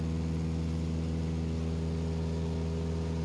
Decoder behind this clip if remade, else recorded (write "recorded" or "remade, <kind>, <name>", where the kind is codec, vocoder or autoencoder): recorded